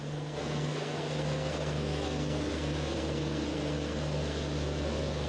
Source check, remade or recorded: remade